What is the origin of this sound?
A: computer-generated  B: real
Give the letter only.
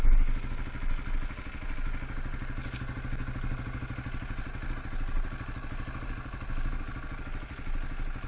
B